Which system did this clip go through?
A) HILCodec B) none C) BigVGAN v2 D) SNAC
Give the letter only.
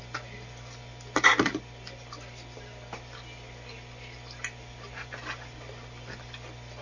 B